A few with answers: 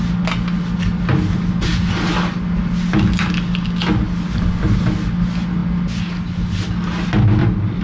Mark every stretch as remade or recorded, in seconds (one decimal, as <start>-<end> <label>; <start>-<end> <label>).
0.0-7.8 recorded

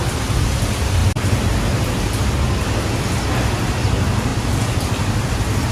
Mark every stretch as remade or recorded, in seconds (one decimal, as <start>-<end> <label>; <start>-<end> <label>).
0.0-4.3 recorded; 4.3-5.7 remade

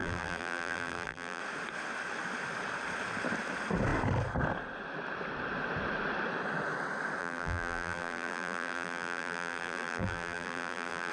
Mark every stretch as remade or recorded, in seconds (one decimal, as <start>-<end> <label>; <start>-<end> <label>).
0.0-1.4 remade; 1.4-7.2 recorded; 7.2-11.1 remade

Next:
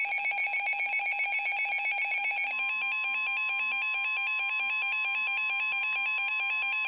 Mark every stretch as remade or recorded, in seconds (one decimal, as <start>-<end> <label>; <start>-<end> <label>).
0.0-6.9 recorded